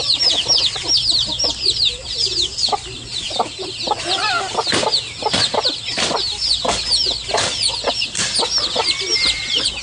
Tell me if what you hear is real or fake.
real